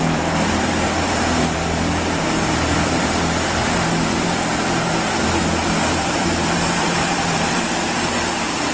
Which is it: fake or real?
fake